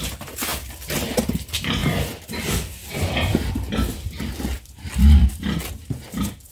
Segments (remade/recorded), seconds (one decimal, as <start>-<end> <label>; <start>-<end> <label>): 0.0-6.5 recorded